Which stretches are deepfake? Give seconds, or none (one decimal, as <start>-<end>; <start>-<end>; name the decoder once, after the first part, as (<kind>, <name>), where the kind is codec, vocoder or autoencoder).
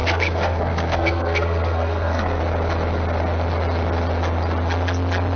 0.0-2.4 (codec, SNAC)